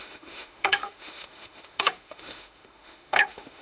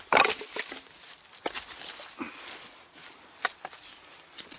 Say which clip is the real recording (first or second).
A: second